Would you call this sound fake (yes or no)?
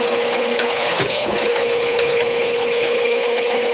yes